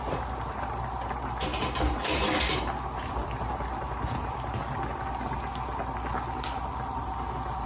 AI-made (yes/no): no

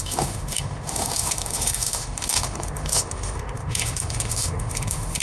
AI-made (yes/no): yes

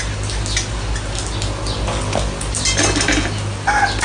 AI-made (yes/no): no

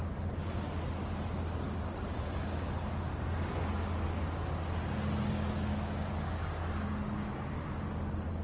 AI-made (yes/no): no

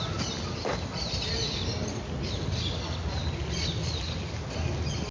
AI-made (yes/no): no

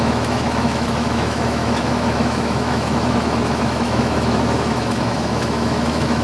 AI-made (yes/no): yes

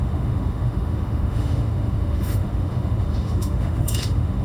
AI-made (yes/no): yes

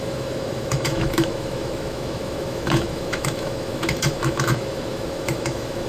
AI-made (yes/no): yes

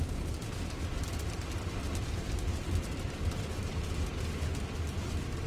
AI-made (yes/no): no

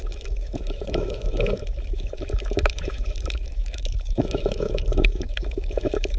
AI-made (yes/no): yes